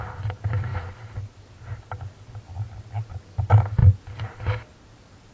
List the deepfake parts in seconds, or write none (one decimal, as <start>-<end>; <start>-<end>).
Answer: none